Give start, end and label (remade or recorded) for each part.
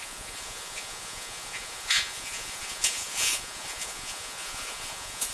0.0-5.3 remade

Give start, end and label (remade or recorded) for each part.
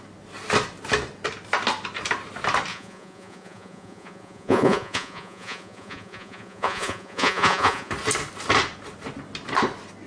0.0-2.7 recorded; 2.7-7.9 remade; 7.9-10.1 recorded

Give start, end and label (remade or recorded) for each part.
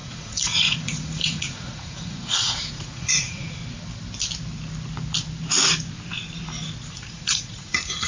0.0-3.6 remade; 3.6-6.9 recorded; 6.9-8.1 remade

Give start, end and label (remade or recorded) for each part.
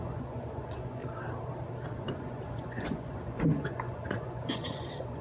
0.0-1.0 remade; 1.0-2.0 recorded; 2.0-5.2 remade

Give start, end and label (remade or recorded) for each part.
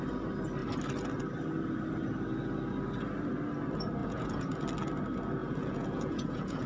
0.0-4.0 recorded; 4.0-4.6 remade; 4.6-5.4 recorded; 5.4-6.7 remade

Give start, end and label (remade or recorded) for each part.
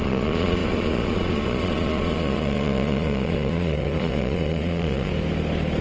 0.0-5.1 remade; 5.1-5.8 recorded